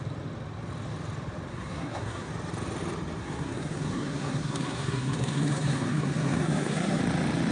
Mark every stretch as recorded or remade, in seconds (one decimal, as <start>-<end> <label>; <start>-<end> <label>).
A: 0.0-1.5 recorded; 1.5-2.3 remade; 2.3-3.2 recorded; 3.2-7.0 remade; 7.0-7.5 recorded